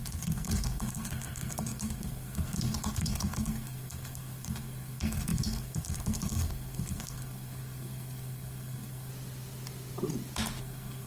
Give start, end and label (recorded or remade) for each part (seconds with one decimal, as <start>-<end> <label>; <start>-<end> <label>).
0.0-9.1 remade; 9.1-10.6 recorded; 10.6-11.1 remade